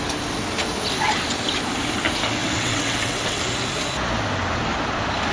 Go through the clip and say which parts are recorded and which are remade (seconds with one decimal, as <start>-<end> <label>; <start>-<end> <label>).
0.0-2.4 recorded; 2.4-3.4 remade; 3.4-5.3 recorded